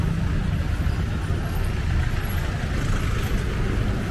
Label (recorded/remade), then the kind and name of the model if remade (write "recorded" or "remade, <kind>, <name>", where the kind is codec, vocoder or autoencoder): recorded